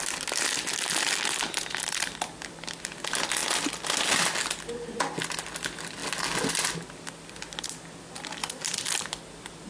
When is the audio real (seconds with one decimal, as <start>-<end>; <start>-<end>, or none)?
0.0-9.7